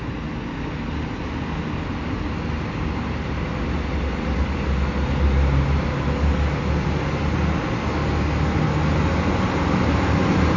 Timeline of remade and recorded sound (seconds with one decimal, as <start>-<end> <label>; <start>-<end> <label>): 0.0-10.6 recorded